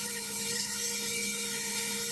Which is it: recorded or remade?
remade